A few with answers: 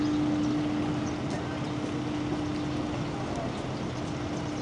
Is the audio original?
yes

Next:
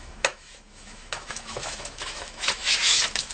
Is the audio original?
no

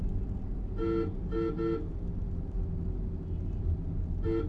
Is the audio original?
yes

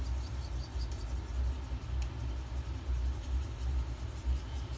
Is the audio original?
yes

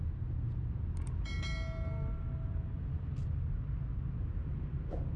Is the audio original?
yes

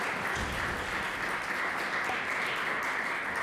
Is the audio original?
yes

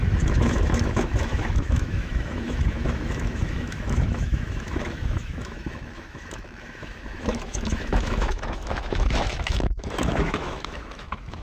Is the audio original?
no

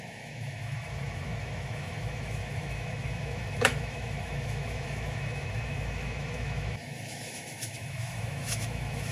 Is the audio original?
no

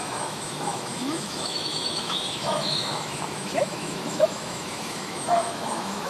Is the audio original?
no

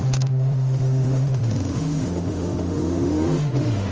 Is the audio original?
no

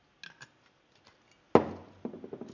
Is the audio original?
yes